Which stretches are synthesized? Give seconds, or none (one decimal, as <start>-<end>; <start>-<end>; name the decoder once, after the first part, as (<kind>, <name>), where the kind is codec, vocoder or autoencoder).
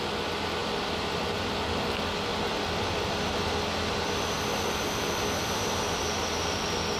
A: 0.6-1.2 (vocoder, BigVGAN v2)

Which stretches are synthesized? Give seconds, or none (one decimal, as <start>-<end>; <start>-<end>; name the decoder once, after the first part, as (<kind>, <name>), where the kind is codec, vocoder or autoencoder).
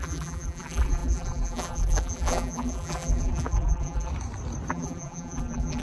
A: 0.0-4.1 (vocoder, BigVGAN v2); 4.7-5.8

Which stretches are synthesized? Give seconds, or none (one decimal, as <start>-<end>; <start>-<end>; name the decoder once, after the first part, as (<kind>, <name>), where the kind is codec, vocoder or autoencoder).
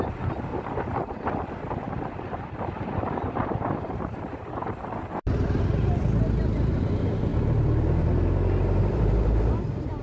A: 0.0-0.5 (vocoder, BigVGAN v2); 3.3-7.3; 8.6-10.0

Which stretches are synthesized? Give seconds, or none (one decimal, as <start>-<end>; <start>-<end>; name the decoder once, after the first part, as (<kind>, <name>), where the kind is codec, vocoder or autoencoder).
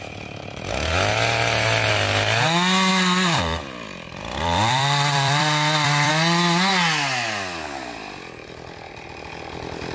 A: 2.9-6.1 (vocoder, BigVGAN v2)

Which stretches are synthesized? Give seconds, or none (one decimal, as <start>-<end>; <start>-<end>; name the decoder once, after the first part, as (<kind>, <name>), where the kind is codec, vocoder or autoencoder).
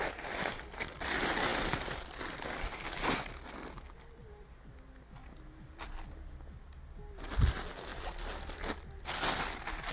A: 5.2-6.0 (vocoder, BigVGAN v2)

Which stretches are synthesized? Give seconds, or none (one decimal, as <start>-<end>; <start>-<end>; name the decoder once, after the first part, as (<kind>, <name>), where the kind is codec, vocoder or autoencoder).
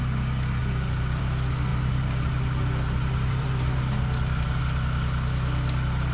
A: 0.6-1.2 (vocoder, BigVGAN v2); 1.7-4.6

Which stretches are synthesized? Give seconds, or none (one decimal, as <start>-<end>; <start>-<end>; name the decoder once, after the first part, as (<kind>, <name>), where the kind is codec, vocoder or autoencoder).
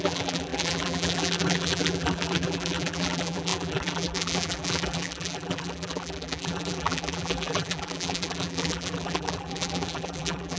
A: 0.0-10.6 (vocoder, BigVGAN v2)